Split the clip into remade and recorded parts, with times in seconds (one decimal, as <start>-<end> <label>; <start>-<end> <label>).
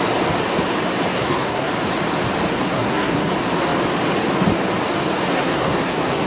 0.0-1.1 recorded; 1.1-1.7 remade; 1.7-2.5 recorded; 2.5-3.3 remade; 3.3-5.3 recorded; 5.3-6.3 remade